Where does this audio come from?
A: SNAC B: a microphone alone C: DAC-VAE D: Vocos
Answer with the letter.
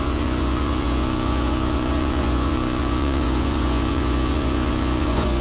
D